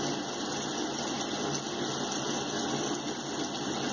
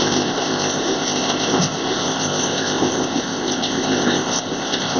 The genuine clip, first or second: first